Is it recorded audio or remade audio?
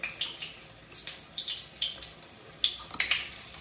recorded